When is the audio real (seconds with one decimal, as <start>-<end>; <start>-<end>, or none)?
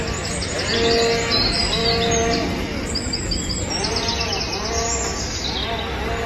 0.0-6.3